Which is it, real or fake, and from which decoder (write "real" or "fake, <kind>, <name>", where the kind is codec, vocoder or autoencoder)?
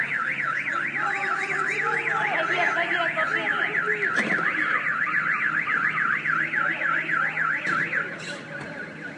real